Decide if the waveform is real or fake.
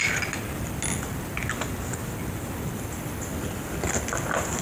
real